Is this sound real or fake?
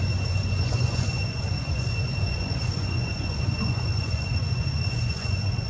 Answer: fake